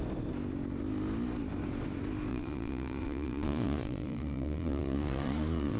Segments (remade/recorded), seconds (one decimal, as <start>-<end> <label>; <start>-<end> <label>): 0.0-2.3 recorded; 2.3-5.8 remade